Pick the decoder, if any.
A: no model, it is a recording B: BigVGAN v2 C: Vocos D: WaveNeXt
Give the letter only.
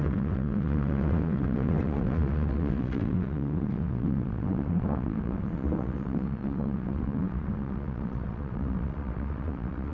D